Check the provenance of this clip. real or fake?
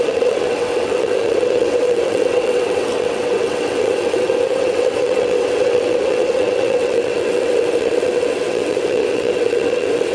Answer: fake